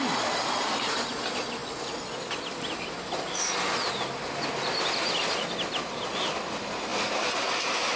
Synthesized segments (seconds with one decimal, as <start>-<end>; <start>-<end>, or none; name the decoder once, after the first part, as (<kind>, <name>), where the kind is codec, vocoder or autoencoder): none